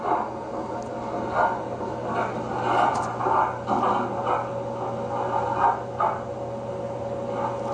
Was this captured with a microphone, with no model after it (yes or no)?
yes